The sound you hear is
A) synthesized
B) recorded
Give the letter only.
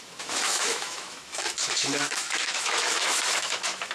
A